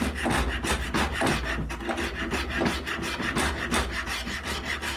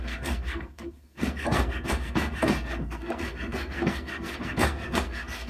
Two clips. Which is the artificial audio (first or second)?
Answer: second